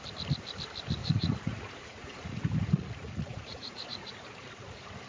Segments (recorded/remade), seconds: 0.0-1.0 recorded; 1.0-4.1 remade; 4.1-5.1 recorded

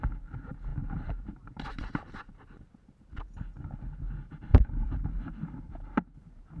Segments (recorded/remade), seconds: 0.0-0.7 recorded; 0.7-2.3 remade; 2.3-4.5 recorded; 4.5-5.6 remade; 5.6-6.6 recorded

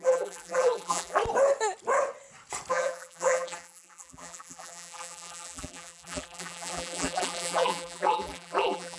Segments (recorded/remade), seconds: 0.0-1.2 remade; 1.2-2.7 recorded; 2.7-9.0 remade

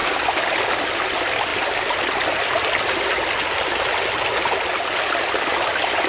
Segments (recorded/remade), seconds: 0.0-0.5 remade; 0.5-6.1 recorded